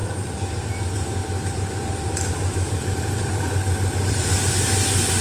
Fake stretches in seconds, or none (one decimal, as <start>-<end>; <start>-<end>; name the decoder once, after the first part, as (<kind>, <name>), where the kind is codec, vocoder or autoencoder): 0.0-0.7 (vocoder, BigVGAN v2); 1.2-4.3